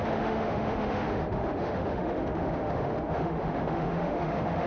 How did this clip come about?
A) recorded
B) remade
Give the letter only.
B